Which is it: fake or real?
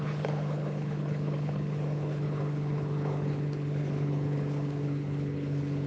fake